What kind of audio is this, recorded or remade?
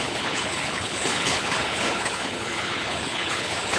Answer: remade